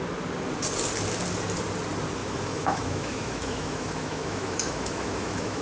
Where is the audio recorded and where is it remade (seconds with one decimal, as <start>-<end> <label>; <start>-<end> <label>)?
0.0-2.2 recorded; 2.2-5.6 remade